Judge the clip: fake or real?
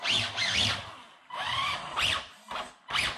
real